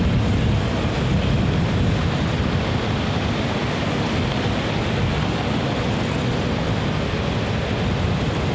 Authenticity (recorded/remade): recorded